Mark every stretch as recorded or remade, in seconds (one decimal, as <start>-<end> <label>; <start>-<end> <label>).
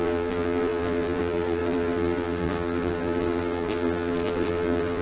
0.0-5.0 remade